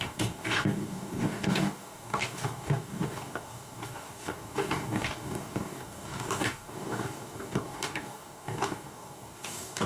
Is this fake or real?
fake